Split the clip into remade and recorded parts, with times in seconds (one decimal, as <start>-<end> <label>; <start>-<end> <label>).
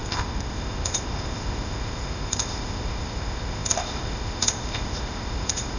0.0-5.8 remade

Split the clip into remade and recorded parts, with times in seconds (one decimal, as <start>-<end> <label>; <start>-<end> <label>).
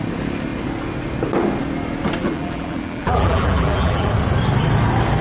0.0-2.2 recorded; 2.2-4.1 remade; 4.1-5.2 recorded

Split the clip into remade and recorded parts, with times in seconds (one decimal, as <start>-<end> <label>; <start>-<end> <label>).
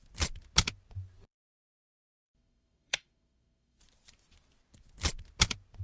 0.0-1.3 recorded; 1.3-3.8 remade; 3.8-5.8 recorded